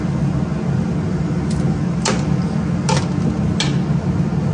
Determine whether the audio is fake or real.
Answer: real